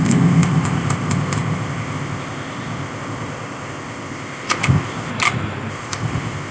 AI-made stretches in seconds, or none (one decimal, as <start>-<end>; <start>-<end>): 0.0-5.1; 5.7-6.5